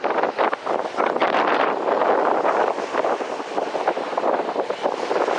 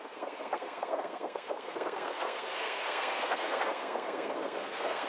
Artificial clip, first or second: second